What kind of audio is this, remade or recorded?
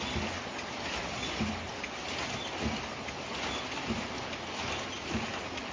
recorded